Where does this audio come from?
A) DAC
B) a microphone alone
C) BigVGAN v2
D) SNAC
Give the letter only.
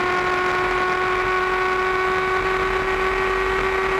B